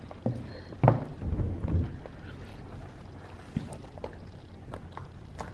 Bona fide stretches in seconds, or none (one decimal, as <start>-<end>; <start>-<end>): 0.0-5.5